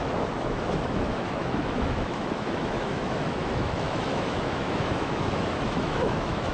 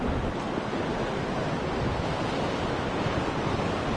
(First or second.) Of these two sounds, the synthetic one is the first